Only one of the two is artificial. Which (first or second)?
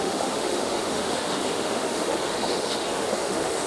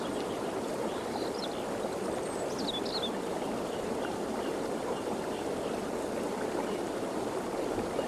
first